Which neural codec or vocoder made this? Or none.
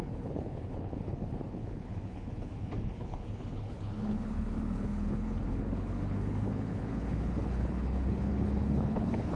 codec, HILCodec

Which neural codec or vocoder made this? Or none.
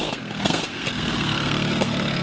codec, SNAC